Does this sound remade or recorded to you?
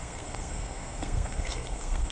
remade